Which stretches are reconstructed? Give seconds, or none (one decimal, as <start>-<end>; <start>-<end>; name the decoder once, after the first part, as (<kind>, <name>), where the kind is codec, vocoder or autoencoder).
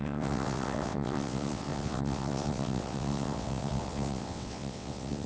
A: 0.0-5.3 (vocoder, WaveNeXt)